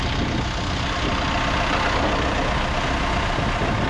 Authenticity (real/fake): real